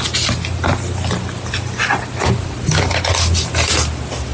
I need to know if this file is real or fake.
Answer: real